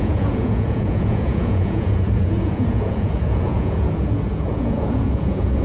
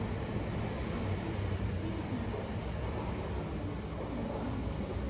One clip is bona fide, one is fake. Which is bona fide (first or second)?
second